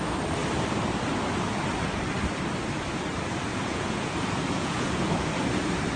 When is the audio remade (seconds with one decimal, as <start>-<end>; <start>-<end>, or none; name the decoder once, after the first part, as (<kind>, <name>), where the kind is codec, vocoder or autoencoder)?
3.5-5.3 (vocoder, Vocos)